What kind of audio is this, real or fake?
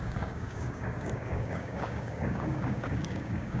fake